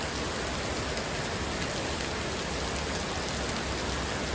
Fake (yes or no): no